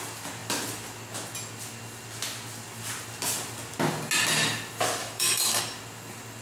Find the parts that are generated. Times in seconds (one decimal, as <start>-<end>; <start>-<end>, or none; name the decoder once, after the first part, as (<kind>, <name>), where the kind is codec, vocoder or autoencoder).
5.0-5.6 (autoencoder, DAC-VAE)